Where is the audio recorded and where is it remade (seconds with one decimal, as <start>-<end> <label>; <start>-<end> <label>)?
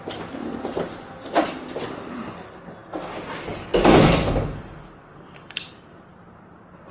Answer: 0.0-6.9 remade